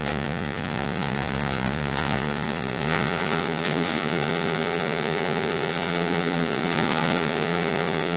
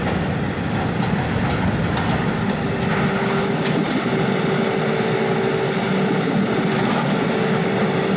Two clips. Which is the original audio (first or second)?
second